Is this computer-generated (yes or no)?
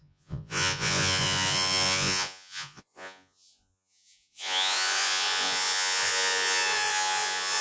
yes